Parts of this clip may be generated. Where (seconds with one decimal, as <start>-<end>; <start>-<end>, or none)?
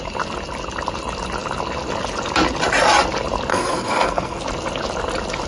3.5-4.4